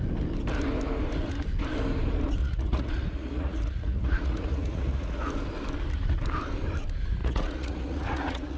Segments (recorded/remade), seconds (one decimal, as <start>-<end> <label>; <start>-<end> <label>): 0.0-2.4 recorded; 2.4-5.3 remade; 5.3-7.2 recorded; 7.2-8.6 remade